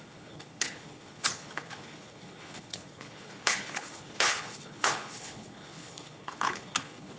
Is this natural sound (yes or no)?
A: no